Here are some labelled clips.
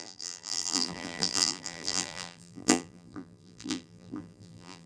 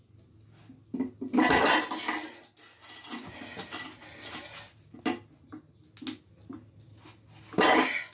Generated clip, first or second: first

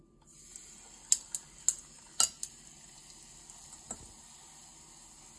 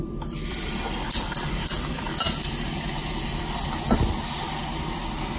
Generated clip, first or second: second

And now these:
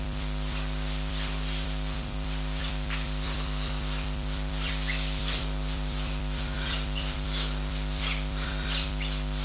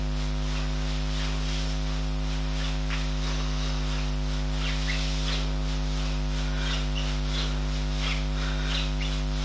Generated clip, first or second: first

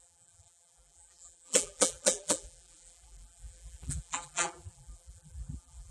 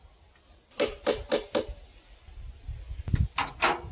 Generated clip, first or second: first